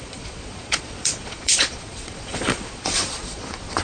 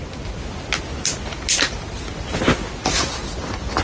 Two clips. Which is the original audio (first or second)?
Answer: second